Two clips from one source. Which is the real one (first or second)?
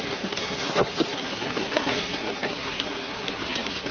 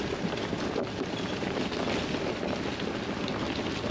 second